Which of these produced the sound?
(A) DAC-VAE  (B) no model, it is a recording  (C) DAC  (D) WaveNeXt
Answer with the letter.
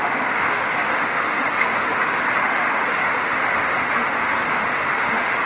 A